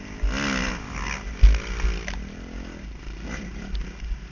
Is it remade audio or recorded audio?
recorded